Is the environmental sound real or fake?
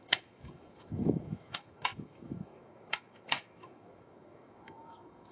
fake